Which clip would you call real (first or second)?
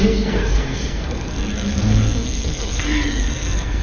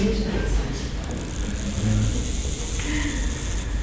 second